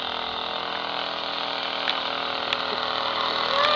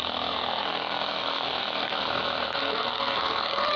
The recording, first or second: first